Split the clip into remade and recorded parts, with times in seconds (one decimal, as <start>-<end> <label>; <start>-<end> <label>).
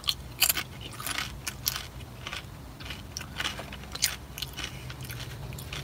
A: 0.0-5.8 recorded